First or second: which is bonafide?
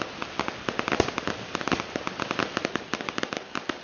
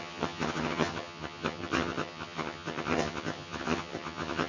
first